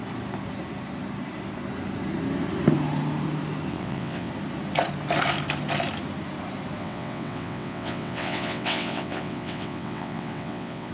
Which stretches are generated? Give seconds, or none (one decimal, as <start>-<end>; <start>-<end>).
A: 3.7-4.3; 6.8-10.9